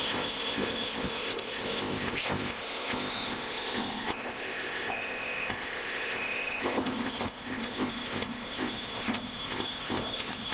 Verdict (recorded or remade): remade